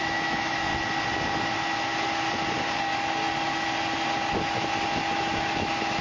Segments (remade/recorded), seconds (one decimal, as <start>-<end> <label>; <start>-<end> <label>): 0.0-0.7 remade; 0.7-4.3 recorded; 4.3-6.0 remade